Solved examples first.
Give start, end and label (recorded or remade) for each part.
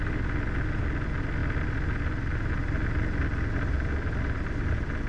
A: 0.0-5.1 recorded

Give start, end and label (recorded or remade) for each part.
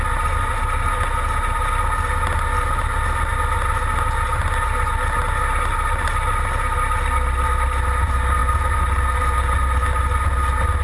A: 0.0-10.8 recorded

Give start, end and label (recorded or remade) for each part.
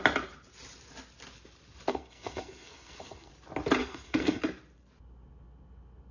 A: 0.0-1.9 recorded; 1.9-3.3 remade; 3.3-3.8 recorded; 3.8-4.4 remade; 4.4-6.1 recorded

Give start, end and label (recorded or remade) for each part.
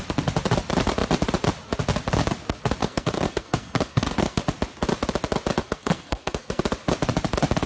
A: 0.0-2.8 recorded; 2.8-4.4 remade; 4.4-5.6 recorded; 5.6-6.6 remade; 6.6-7.7 recorded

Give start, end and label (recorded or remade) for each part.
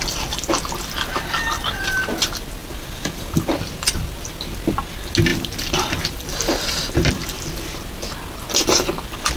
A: 0.0-2.6 recorded; 2.6-4.3 remade; 4.3-5.3 recorded; 5.3-7.1 remade; 7.1-9.4 recorded